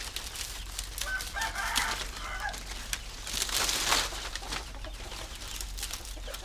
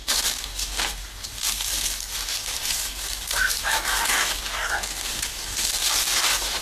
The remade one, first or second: second